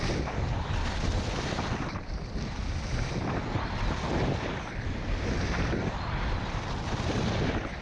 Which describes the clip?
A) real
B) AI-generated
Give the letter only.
A